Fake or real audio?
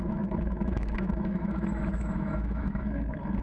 fake